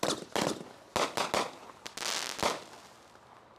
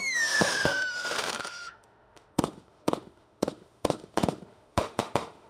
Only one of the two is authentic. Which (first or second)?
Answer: first